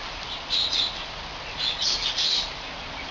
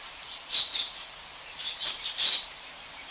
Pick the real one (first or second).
first